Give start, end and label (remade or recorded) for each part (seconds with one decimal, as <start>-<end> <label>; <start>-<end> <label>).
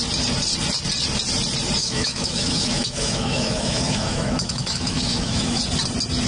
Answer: 0.0-1.8 recorded; 1.8-5.6 remade; 5.6-6.3 recorded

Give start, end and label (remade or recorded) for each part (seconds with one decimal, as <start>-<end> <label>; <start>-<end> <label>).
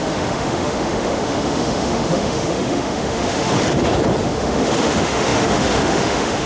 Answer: 0.0-3.5 remade; 3.5-4.2 recorded; 4.2-6.5 remade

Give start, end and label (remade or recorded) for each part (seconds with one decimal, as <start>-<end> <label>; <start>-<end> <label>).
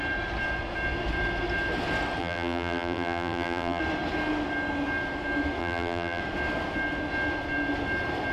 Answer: 0.0-2.2 recorded; 2.2-3.8 remade; 3.8-5.6 recorded; 5.6-6.2 remade; 6.2-8.3 recorded